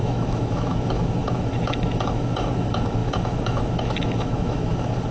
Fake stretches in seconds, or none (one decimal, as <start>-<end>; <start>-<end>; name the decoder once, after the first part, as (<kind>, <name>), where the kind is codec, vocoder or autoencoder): 0.0-5.1 (autoencoder, DAC-VAE)